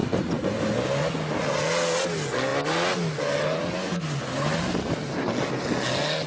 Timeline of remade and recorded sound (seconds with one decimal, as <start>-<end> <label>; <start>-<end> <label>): 0.0-6.3 recorded